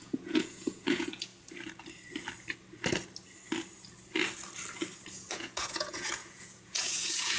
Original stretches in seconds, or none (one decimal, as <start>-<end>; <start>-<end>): 1.3-5.1